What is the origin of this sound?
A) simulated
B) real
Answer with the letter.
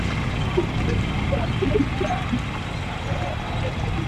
B